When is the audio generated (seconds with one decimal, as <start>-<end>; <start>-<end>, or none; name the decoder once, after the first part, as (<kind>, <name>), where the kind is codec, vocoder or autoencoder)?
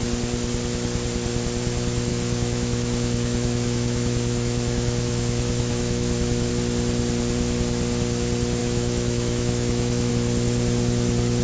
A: 2.1-6.5 (autoencoder, DAC-VAE); 8.6-10.1